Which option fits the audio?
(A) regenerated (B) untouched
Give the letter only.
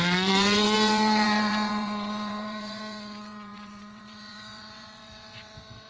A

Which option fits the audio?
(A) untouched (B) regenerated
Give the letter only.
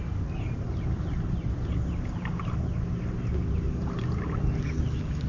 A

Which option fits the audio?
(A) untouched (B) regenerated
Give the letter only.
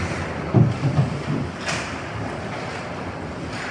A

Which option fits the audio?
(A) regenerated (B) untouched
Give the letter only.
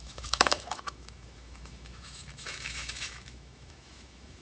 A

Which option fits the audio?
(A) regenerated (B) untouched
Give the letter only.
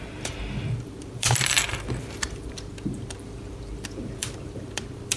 A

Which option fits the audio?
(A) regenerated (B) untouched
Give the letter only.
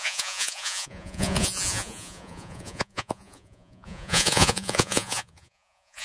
A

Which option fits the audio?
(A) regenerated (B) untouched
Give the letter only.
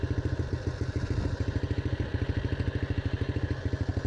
B